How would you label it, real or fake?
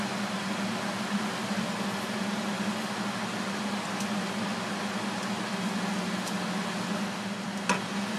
real